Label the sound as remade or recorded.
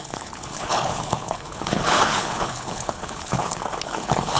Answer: remade